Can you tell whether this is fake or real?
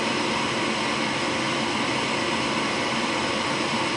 real